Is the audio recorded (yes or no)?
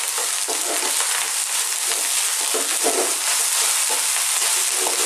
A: yes